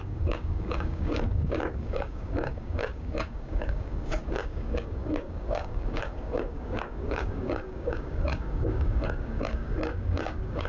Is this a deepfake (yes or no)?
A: yes